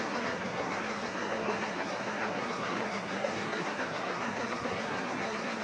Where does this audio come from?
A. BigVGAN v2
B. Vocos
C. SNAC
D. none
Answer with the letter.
C